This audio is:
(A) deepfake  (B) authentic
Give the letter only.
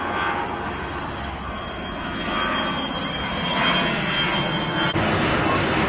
B